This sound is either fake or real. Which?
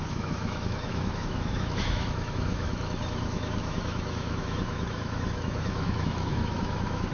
fake